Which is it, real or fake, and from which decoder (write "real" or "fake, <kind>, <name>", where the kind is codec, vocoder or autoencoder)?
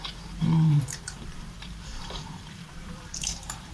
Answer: fake, vocoder, BigVGAN v2